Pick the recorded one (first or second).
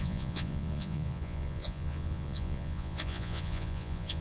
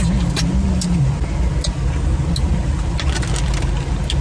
second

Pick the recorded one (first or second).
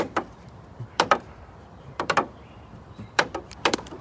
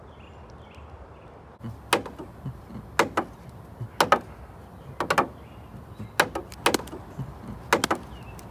second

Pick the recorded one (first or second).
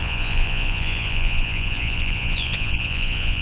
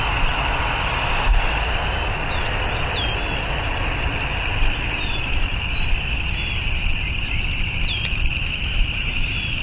second